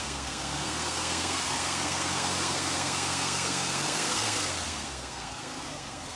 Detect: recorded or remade remade